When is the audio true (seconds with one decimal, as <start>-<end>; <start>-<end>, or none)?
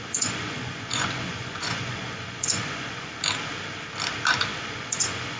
3.2-4.5